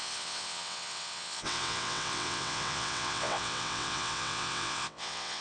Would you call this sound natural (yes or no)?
no